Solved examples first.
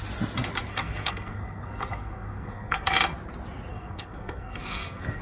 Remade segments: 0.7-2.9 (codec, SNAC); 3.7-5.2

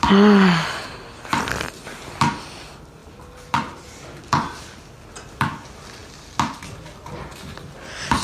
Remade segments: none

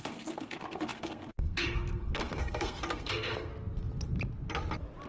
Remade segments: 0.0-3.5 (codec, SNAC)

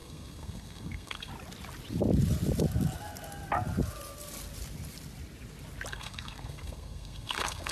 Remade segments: 0.0-1.3 (codec, SNAC); 5.9-7.7

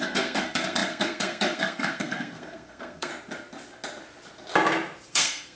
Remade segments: 0.0-3.1 (codec, SNAC); 5.1-5.6